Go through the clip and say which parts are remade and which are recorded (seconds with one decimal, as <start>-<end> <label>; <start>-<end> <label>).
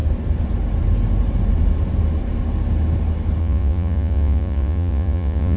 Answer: 0.0-3.4 recorded; 3.4-5.6 remade